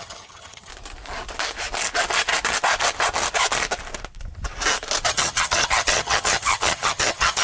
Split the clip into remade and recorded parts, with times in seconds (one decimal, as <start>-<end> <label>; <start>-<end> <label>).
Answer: 0.0-0.7 remade; 0.7-5.1 recorded; 5.1-7.4 remade